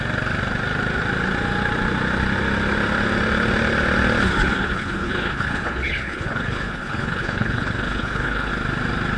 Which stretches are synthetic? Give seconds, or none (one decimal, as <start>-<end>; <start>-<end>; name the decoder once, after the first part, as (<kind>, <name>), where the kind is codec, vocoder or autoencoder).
4.4-8.5 (codec, HILCodec)